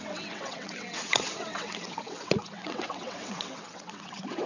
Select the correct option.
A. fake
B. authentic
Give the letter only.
A